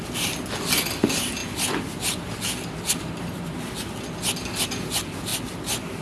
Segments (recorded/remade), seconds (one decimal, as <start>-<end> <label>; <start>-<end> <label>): 0.0-6.0 recorded